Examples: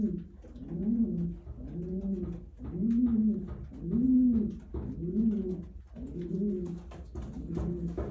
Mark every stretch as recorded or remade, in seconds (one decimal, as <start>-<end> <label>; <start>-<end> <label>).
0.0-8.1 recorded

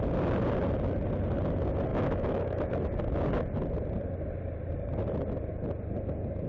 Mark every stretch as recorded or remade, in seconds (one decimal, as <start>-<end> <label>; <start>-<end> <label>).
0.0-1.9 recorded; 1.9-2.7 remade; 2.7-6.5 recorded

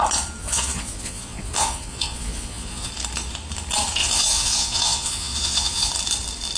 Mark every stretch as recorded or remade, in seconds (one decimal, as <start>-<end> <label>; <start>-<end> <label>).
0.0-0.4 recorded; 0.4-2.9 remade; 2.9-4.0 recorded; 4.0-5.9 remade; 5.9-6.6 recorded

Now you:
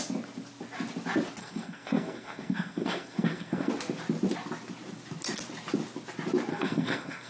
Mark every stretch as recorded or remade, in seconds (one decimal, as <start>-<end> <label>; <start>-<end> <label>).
0.0-1.4 recorded; 1.4-3.7 remade; 3.7-6.5 recorded; 6.5-7.3 remade

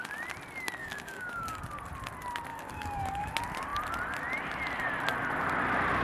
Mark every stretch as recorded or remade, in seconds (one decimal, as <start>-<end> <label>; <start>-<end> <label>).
0.0-0.8 recorded; 0.8-1.6 remade; 1.6-2.5 recorded; 2.5-3.3 remade; 3.3-6.0 recorded

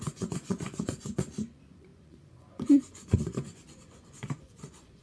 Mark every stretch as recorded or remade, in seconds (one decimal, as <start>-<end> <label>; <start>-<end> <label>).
0.0-5.0 remade